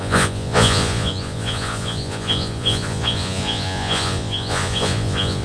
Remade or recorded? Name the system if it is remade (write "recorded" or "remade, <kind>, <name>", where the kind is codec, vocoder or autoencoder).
remade, vocoder, Vocos